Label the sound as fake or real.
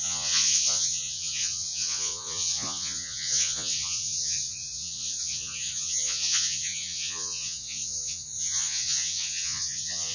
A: fake